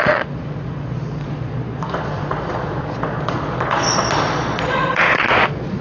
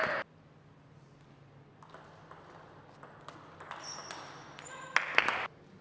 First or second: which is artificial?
first